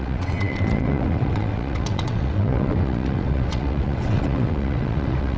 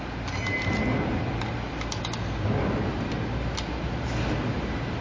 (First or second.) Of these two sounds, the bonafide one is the second